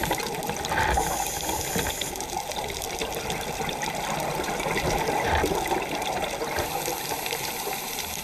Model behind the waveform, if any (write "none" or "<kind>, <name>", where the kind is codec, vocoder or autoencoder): vocoder, BigVGAN v2